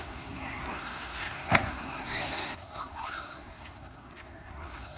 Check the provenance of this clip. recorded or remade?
remade